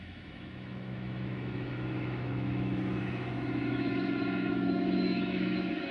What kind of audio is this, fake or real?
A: fake